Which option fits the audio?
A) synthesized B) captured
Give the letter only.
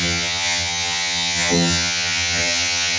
A